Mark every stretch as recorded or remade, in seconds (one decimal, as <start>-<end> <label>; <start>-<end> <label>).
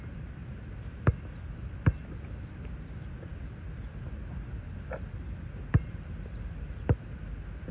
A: 0.0-7.7 recorded